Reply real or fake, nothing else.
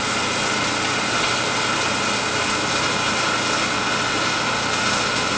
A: real